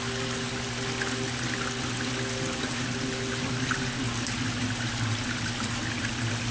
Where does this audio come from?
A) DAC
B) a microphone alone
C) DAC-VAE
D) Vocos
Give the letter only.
B